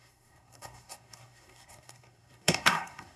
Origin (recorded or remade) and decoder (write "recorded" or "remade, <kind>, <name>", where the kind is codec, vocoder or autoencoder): remade, codec, SNAC